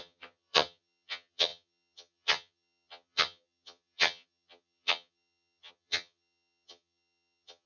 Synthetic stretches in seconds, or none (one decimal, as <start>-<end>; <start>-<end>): 0.0-7.7